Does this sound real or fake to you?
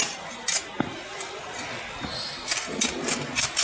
real